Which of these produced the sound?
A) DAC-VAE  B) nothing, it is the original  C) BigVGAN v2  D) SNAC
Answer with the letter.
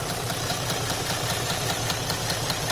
B